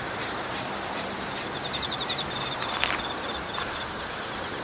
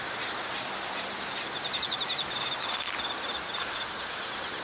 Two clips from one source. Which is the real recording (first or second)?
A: second